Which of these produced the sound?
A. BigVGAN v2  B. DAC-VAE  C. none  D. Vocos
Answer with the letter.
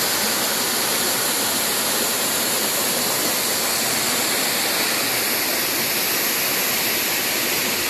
C